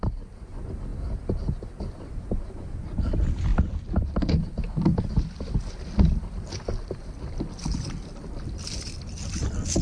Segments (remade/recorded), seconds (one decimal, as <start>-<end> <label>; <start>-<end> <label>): 0.0-9.8 recorded